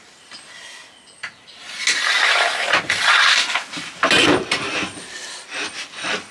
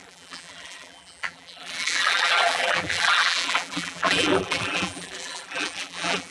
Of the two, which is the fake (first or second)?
second